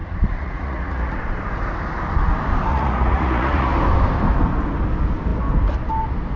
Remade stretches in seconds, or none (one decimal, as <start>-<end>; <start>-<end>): 0.0-1.2; 2.7-3.7

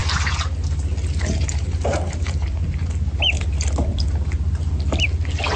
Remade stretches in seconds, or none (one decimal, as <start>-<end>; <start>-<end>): none

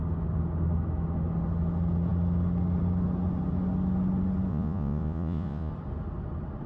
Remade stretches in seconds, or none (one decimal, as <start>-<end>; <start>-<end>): 4.5-5.7

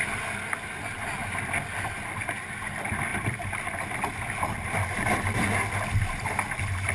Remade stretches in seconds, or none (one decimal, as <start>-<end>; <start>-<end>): 1.2-2.3; 3.1-6.9